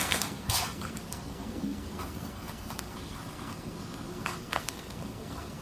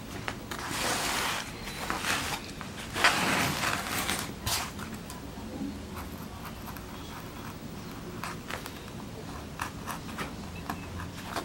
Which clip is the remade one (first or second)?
first